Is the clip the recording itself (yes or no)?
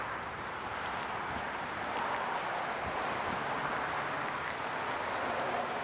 yes